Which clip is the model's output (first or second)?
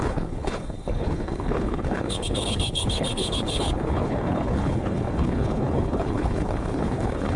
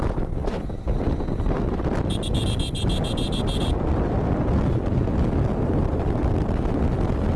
first